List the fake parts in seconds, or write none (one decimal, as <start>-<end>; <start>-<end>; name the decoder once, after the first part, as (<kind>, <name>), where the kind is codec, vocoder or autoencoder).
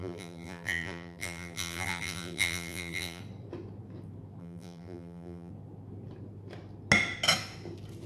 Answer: 0.0-3.2 (vocoder, BigVGAN v2); 4.4-5.5